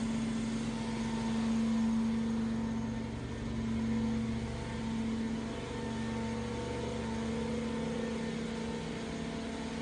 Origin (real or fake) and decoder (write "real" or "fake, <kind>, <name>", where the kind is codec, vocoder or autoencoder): real